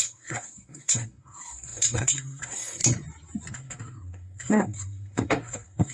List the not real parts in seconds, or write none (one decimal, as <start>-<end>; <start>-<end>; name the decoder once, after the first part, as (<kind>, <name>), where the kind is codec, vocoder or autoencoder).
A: 0.0-2.8 (codec, SNAC); 3.5-5.9